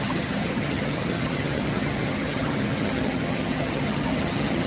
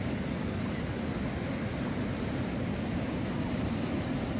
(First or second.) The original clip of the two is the second